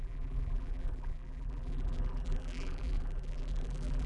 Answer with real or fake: fake